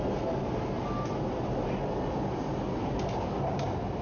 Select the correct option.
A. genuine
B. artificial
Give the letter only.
A